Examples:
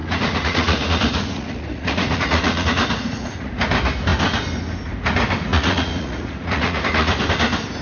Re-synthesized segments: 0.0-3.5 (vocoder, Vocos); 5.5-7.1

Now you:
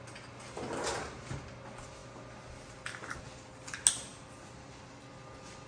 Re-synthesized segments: none

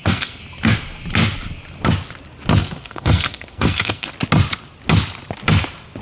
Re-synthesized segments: 0.0-0.4 (codec, SNAC); 2.6-4.1

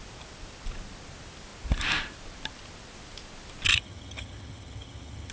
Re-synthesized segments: 3.7-5.3 (vocoder, HiFi-GAN)

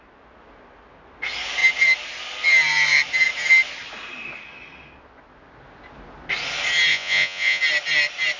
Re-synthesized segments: 6.9-7.6 (vocoder, Vocos)

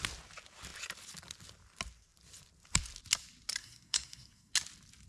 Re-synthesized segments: 3.6-4.5 (codec, SNAC)

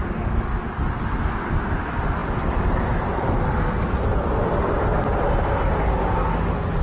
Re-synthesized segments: none